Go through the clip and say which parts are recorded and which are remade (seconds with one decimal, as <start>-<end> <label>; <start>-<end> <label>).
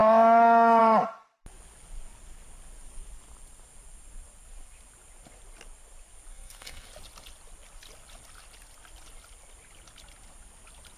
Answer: 0.0-6.3 recorded; 6.3-6.9 remade; 6.9-11.0 recorded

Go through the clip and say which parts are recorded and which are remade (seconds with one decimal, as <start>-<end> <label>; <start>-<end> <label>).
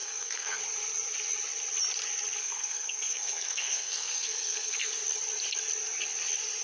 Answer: 0.0-0.6 remade; 0.6-2.4 recorded; 2.4-4.9 remade; 4.9-6.6 recorded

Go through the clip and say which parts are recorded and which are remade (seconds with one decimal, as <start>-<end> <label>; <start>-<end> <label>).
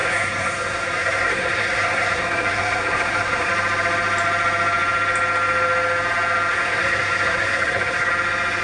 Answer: 0.0-3.5 remade; 3.5-6.5 recorded; 6.5-8.1 remade; 8.1-8.6 recorded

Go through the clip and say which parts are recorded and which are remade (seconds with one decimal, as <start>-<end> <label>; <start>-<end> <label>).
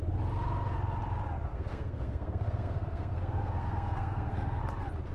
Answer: 0.0-1.5 recorded; 1.5-4.6 remade; 4.6-5.1 recorded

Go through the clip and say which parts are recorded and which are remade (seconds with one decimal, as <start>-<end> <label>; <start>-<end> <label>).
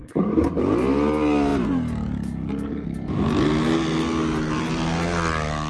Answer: 0.0-0.6 remade; 0.6-5.7 recorded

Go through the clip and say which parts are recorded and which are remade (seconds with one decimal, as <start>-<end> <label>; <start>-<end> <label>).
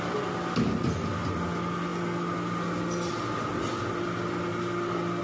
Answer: 0.0-5.2 recorded